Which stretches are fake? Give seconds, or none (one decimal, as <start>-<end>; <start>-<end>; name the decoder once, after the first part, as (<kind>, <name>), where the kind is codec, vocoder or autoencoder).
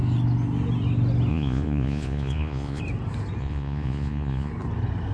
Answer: 1.3-2.8 (vocoder, Vocos); 3.4-4.5